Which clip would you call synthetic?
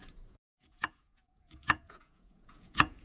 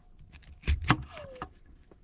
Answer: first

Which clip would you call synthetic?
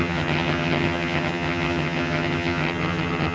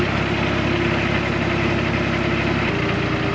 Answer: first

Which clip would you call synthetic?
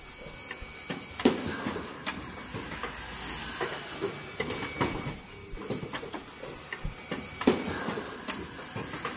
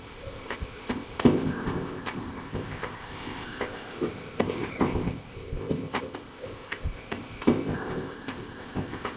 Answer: second